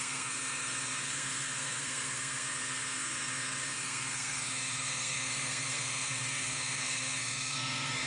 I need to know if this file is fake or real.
fake